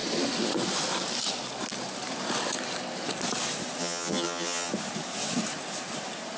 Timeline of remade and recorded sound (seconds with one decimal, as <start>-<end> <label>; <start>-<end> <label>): 0.0-3.8 recorded; 3.8-4.7 remade; 4.7-6.4 recorded